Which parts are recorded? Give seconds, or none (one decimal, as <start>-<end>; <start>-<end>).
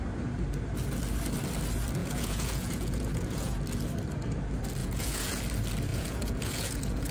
0.0-2.0; 3.6-4.8; 5.4-5.9